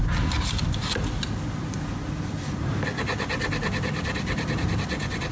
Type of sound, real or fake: real